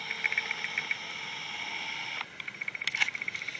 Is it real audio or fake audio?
real